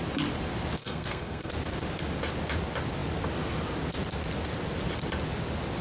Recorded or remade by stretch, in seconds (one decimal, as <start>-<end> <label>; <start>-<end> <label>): 0.0-0.8 recorded; 0.8-1.5 remade; 1.5-5.8 recorded